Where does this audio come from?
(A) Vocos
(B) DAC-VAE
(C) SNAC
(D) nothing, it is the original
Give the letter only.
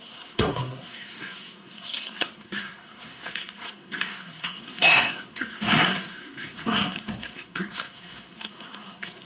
C